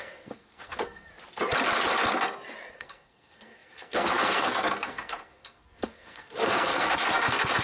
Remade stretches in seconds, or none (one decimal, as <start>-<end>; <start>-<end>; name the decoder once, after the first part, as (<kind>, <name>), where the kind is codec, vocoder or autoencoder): 0.0-1.1 (codec, SNAC); 2.7-7.6